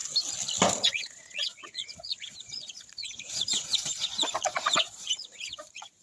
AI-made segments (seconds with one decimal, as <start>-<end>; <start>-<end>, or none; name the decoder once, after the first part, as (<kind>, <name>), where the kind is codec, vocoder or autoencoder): 0.8-6.0 (vocoder, Vocos)